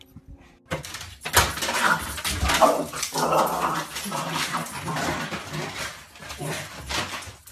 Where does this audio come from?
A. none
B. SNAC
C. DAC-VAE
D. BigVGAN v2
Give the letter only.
A